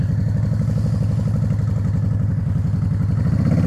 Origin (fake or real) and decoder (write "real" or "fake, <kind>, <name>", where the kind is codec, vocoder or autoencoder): real